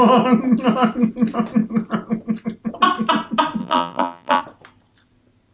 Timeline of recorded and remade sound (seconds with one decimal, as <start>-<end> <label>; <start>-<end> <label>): 0.0-3.6 recorded; 3.6-4.4 remade; 4.4-5.5 recorded